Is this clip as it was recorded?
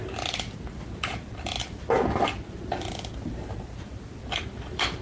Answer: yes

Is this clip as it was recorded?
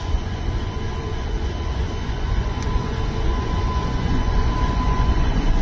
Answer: no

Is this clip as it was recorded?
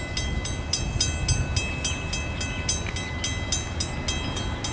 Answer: yes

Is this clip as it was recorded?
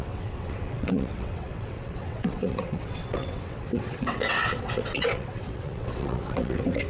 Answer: no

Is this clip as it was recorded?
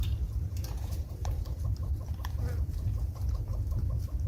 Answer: no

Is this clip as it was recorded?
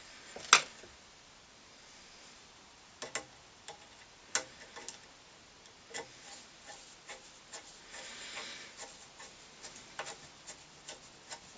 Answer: yes